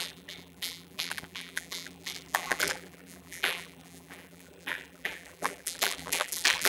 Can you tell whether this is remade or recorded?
remade